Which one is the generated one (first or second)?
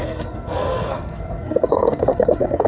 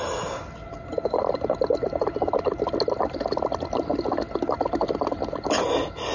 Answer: first